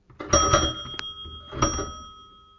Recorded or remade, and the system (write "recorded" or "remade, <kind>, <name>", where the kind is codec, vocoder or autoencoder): recorded